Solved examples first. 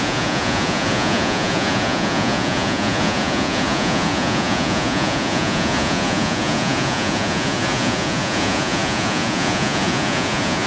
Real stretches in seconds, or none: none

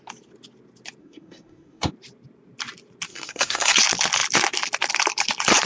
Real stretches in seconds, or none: 0.0-1.0; 1.9-3.1; 3.8-5.6

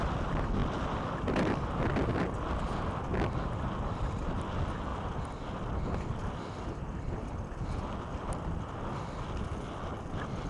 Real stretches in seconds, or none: 0.0-0.6; 2.5-4.9; 7.4-10.5

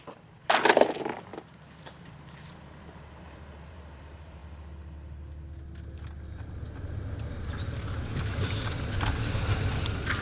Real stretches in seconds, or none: 4.4-8.0

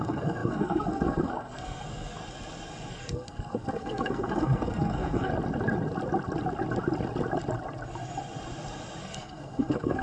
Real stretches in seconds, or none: 2.2-2.9; 5.3-9.0

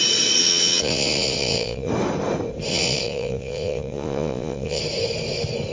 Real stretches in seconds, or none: 0.0-0.4; 1.9-2.7; 4.8-5.7

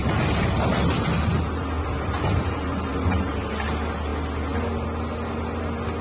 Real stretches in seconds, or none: 3.3-6.0

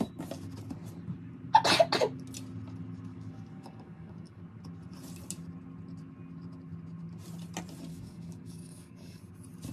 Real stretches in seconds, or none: 0.0-3.1; 4.4-7.9; 9.2-9.7